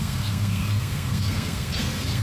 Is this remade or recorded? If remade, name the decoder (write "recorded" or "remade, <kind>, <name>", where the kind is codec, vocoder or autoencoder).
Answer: remade, codec, SNAC